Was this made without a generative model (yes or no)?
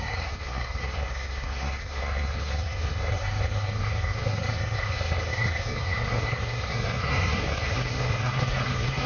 no